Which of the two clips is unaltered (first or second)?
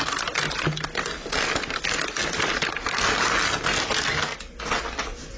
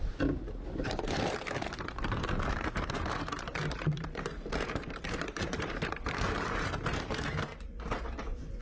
first